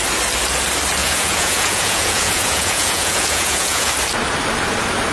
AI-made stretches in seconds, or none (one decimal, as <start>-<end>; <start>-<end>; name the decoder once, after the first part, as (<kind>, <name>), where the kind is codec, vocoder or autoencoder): 1.0-3.9 (vocoder, Vocos)